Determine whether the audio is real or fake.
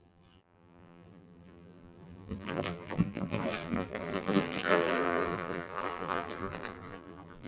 fake